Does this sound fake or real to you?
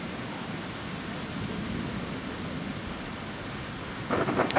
real